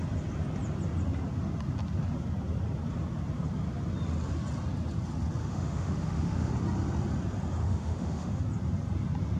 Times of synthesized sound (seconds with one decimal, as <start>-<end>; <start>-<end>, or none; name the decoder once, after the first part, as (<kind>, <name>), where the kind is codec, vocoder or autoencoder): 5.4-6.5 (autoencoder, DAC-VAE); 7.6-8.4